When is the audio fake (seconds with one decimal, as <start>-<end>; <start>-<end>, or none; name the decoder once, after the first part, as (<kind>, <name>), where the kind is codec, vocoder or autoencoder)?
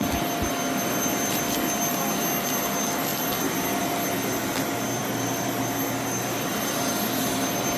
5.0-5.5 (vocoder, BigVGAN v2)